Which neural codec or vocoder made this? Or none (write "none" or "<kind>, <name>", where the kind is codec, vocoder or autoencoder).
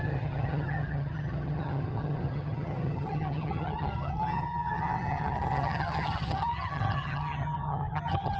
vocoder, HiFi-GAN